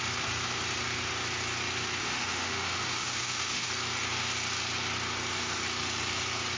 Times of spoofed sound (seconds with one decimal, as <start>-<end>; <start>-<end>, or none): 2.0-3.7